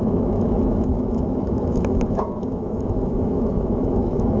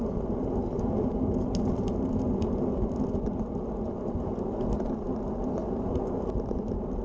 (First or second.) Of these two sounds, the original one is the second